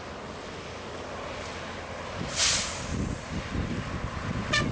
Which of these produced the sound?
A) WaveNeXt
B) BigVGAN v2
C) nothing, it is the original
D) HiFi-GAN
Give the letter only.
C